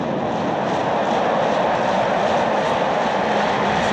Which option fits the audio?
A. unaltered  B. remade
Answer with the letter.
A